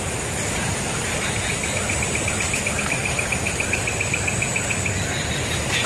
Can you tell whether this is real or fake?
real